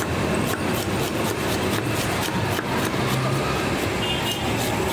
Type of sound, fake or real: real